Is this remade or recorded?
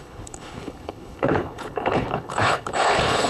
remade